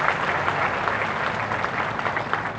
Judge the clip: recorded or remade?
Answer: recorded